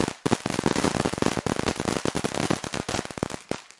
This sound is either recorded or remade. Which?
recorded